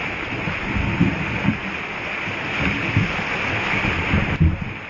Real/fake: real